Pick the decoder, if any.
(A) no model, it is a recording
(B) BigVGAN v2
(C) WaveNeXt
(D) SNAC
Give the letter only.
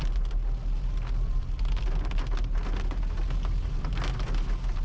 A